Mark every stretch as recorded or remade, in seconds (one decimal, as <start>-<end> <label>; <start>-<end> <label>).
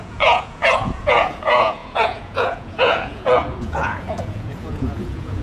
0.0-5.4 remade